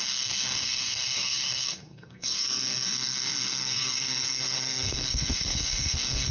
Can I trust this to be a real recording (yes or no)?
no